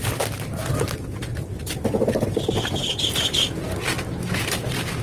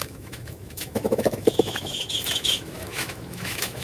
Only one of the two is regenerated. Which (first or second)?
second